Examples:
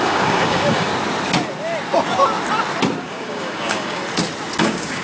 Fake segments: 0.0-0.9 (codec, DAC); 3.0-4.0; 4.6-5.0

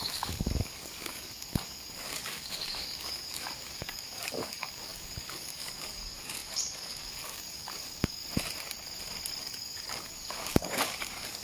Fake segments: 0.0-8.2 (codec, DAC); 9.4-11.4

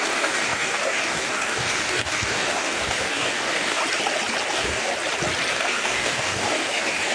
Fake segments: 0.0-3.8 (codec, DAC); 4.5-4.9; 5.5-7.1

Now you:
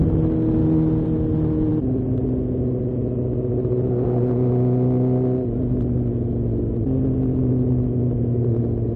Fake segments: none

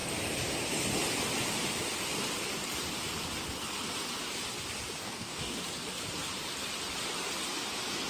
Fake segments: 5.0-5.6 (codec, DAC)